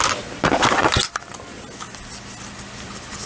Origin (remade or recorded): recorded